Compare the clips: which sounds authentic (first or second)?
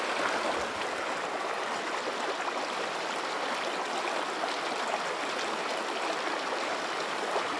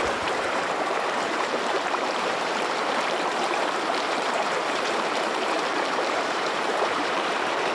first